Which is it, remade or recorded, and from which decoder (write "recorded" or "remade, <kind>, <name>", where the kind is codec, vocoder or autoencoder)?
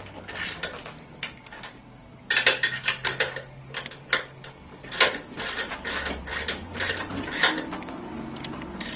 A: recorded